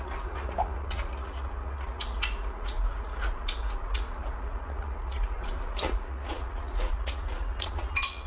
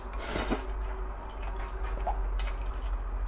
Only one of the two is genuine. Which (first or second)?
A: second